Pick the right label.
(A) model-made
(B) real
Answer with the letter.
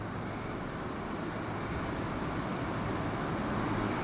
B